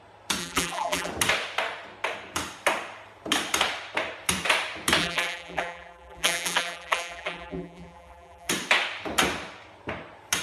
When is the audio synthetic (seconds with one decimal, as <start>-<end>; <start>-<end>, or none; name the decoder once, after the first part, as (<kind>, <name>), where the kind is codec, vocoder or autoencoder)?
0.4-1.1 (vocoder, BigVGAN v2); 5.0-8.5